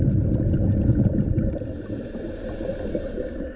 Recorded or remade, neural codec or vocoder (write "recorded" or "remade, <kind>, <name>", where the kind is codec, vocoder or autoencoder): recorded